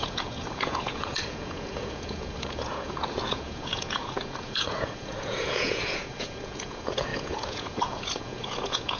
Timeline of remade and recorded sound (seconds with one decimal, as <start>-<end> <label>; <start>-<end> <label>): 0.0-9.0 remade